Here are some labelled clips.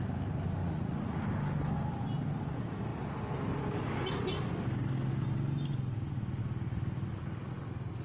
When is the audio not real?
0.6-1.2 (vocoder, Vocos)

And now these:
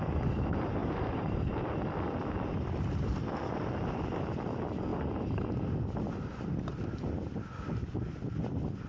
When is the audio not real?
0.8-1.4 (vocoder, BigVGAN v2)